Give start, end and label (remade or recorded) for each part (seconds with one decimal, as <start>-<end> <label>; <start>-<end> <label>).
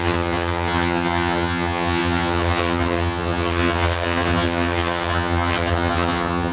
0.0-6.5 remade